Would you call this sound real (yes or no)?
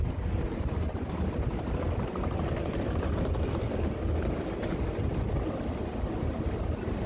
yes